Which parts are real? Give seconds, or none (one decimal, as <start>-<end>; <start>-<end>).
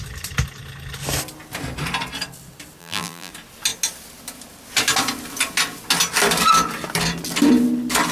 0.0-2.8; 3.3-8.1